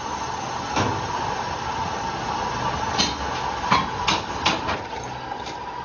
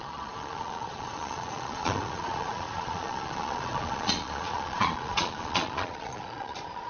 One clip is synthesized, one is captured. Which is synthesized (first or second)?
second